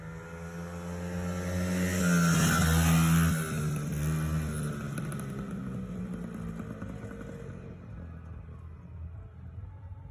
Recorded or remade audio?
recorded